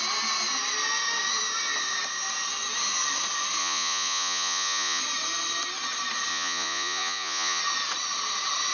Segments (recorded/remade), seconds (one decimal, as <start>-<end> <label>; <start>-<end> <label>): 0.0-3.6 recorded; 3.6-5.0 remade; 5.0-6.3 recorded; 6.3-7.6 remade; 7.6-8.7 recorded